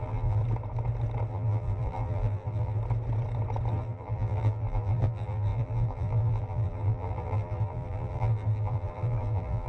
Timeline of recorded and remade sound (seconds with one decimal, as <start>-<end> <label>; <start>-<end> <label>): 0.0-0.4 remade; 0.4-1.3 recorded; 1.3-2.8 remade; 2.8-3.7 recorded; 3.7-9.7 remade

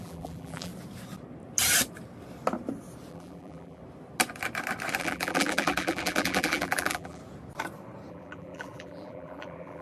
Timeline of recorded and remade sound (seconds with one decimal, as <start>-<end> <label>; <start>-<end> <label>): 0.0-0.7 remade; 0.7-3.1 recorded; 3.1-3.8 remade; 3.8-5.0 recorded; 5.0-7.2 remade; 7.2-8.1 recorded; 8.1-9.8 remade

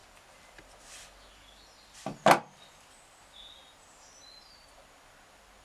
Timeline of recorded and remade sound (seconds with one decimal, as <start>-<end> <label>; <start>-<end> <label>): 0.0-5.6 recorded

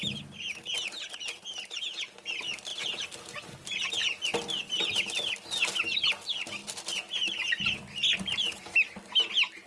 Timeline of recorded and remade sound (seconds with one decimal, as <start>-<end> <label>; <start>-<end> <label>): 0.0-2.7 recorded; 2.7-3.5 remade; 3.5-9.7 recorded

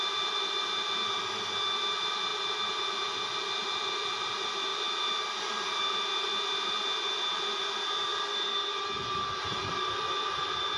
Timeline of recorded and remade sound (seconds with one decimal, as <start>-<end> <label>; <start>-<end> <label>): 0.0-10.8 recorded

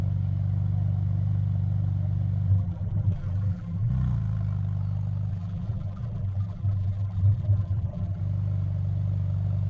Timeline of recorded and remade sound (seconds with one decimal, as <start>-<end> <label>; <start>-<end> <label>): 0.0-2.5 recorded; 2.5-3.9 remade; 3.9-5.3 recorded; 5.3-8.2 remade; 8.2-9.7 recorded

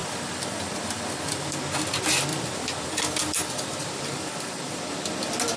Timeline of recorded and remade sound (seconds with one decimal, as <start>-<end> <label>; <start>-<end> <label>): 0.0-1.6 remade; 1.6-2.3 recorded; 2.3-4.8 remade; 4.8-5.6 recorded

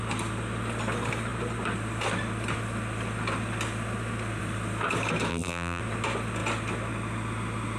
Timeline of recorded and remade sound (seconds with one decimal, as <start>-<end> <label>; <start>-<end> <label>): 0.0-5.3 recorded; 5.3-5.8 remade; 5.8-7.8 recorded